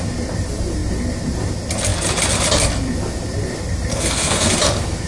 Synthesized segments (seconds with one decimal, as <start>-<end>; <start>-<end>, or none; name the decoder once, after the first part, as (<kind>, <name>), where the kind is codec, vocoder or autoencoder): 3.9-4.5 (codec, SNAC)